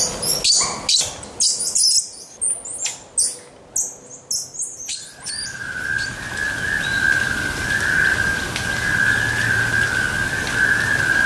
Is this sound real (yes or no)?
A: yes